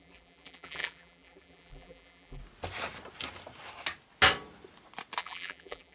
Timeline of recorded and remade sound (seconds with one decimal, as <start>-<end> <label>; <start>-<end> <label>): 0.0-2.4 remade; 2.4-5.2 recorded; 5.2-5.9 remade